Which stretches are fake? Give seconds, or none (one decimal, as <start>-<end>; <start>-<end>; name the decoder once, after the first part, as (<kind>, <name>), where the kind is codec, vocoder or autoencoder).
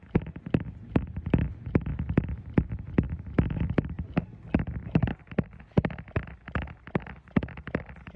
1.9-4.2 (vocoder, BigVGAN v2)